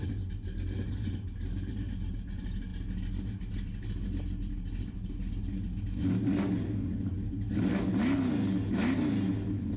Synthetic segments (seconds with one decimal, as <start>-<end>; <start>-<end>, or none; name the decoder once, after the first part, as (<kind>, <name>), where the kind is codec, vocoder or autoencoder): none